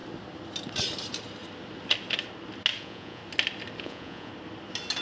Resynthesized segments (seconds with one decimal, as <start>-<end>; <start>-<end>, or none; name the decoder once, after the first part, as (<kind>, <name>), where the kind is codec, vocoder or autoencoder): 2.8-3.2 (vocoder, Vocos); 3.8-4.3